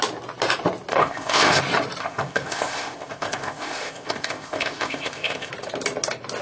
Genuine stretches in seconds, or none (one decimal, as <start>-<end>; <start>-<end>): 0.0-0.9; 1.6-2.0; 5.5-6.4